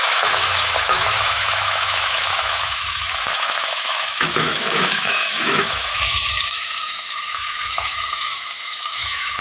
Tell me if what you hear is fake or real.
fake